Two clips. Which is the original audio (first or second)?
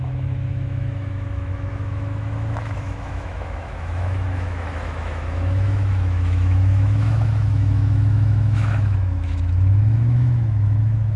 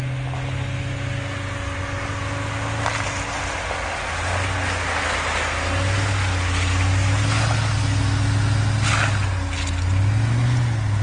second